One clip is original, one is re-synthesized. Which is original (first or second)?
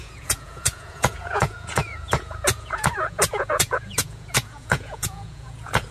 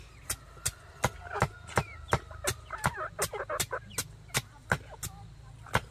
second